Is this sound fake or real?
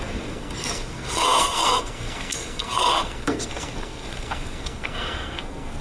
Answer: fake